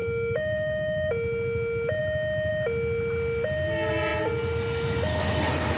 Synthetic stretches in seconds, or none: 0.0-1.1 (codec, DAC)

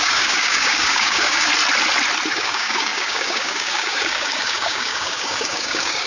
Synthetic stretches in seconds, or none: 0.0-1.5 (codec, DAC); 2.3-6.1